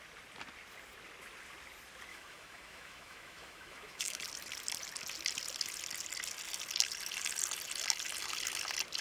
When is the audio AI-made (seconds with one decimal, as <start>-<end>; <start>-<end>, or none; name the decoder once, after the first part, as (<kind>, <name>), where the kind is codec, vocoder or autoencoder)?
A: 2.1-4.2 (autoencoder, DAC-VAE)